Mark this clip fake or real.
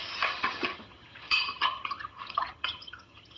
fake